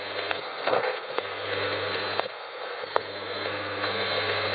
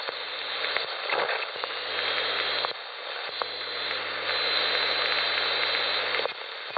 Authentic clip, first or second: second